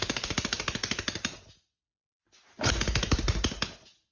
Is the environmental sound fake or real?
real